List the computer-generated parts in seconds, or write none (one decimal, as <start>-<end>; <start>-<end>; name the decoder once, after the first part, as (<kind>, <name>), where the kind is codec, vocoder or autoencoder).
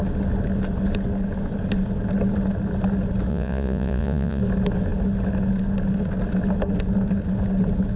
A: 3.3-4.4 (vocoder, Vocos)